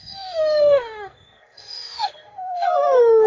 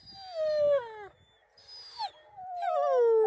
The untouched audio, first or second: second